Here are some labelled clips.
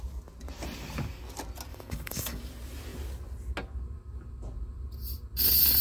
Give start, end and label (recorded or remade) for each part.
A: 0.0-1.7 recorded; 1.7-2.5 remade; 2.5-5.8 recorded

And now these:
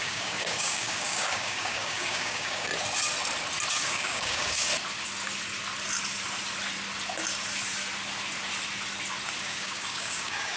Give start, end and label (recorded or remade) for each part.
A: 0.0-2.7 remade; 2.7-3.7 recorded; 3.7-4.7 remade; 4.7-9.4 recorded; 9.4-10.6 remade

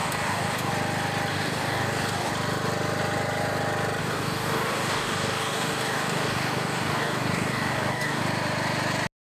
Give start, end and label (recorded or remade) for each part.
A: 0.0-0.7 remade; 0.7-1.3 recorded; 1.3-2.3 remade; 2.3-4.0 recorded; 4.0-8.2 remade; 8.2-9.3 recorded

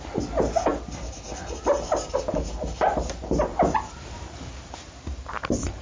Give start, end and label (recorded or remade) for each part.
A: 0.0-5.8 recorded